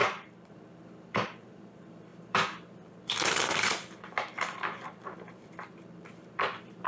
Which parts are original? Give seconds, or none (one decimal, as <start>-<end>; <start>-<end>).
none